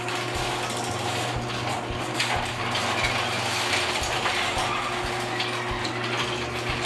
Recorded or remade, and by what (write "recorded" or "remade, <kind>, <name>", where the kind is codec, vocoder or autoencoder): recorded